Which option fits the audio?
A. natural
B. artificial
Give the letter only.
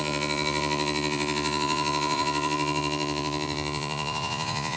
B